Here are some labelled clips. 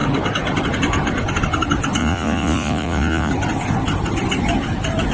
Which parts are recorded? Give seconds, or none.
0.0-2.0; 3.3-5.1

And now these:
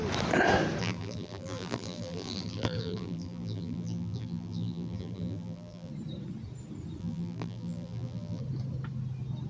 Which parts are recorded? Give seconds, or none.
0.0-0.8; 5.9-7.0; 8.4-9.5

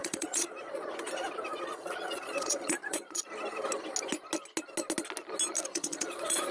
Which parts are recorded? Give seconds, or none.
0.8-1.5; 3.3-5.7

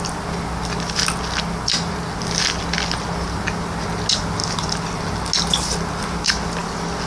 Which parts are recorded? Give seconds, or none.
0.0-7.1

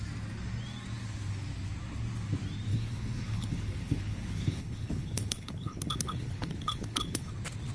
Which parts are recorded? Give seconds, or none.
0.0-2.7; 7.3-7.7

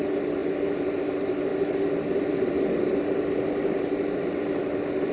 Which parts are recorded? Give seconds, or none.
0.0-5.1

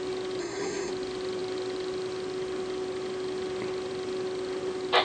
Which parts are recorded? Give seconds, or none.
0.0-0.4; 0.9-5.0